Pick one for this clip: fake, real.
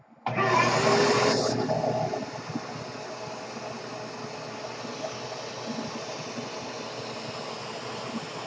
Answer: real